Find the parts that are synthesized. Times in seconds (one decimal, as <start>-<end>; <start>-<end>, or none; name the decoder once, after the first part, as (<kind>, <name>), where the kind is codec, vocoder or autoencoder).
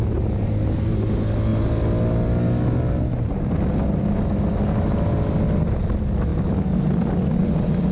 none